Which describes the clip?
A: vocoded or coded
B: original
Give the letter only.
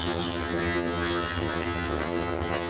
A